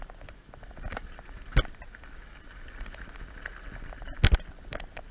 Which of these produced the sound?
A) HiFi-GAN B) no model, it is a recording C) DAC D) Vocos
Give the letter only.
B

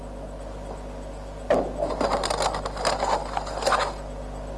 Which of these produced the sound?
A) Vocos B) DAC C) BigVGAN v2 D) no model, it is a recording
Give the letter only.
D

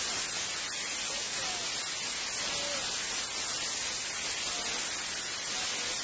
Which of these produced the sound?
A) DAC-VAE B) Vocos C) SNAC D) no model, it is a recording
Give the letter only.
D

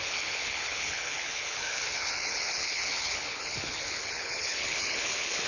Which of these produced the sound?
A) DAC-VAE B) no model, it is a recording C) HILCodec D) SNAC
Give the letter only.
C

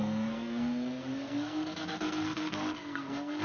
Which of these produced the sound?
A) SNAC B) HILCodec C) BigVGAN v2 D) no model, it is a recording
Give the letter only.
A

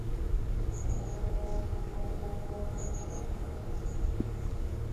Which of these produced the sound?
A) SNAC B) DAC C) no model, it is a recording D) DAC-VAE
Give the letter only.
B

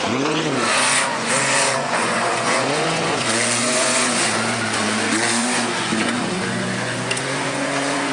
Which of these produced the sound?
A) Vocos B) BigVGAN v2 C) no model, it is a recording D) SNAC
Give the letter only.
A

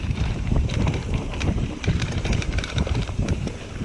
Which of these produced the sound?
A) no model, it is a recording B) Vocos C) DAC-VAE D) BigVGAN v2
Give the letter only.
D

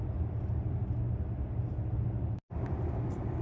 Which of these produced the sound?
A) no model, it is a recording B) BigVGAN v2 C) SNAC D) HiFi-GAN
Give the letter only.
A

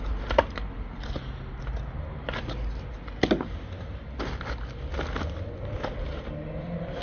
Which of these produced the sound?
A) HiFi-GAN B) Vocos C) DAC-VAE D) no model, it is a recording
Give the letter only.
D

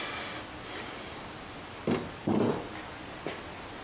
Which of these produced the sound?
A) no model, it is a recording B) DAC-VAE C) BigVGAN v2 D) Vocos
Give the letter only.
A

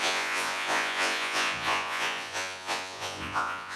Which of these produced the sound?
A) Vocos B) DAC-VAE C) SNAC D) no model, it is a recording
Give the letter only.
A